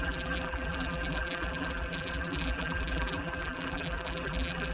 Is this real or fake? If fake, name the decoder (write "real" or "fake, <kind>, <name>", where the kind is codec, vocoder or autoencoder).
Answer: fake, vocoder, BigVGAN v2